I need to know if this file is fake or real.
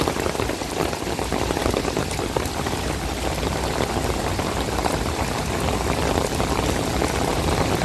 real